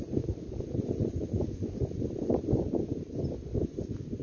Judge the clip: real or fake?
real